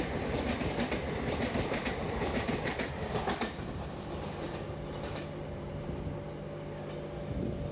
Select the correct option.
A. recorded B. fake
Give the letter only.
A